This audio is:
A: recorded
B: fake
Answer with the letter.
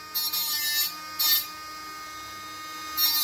A